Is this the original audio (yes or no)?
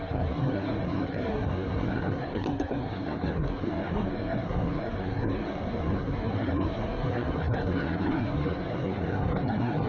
no